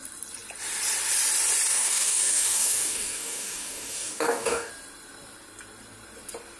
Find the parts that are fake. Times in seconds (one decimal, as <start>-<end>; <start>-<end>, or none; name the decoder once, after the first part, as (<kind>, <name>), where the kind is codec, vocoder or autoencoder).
1.7-4.7 (codec, DAC)